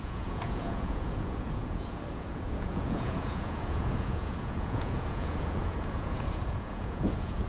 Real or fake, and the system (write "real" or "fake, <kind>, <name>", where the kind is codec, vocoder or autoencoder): fake, vocoder, Vocos